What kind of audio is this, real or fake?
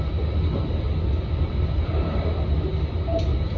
real